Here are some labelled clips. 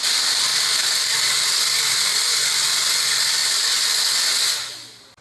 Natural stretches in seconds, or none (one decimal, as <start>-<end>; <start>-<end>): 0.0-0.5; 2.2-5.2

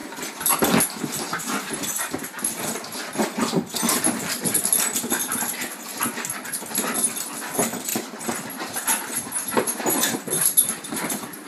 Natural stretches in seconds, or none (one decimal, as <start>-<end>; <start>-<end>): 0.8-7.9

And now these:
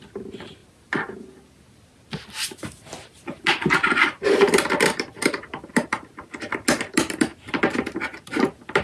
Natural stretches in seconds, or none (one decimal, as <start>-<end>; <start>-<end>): 0.0-8.8

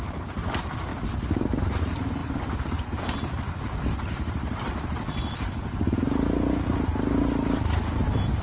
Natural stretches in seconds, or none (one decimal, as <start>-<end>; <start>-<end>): 0.9-1.8

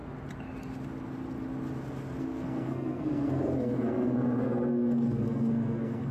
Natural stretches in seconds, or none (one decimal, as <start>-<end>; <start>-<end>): 0.0-2.2

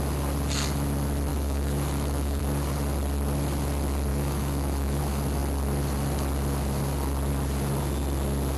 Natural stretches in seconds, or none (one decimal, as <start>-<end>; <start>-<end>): 0.0-1.3; 2.4-4.1; 5.0-8.6

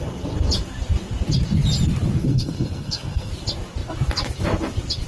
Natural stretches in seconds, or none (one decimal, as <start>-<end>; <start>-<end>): 0.0-2.2; 3.3-5.1